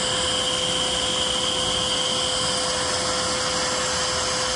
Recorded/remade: recorded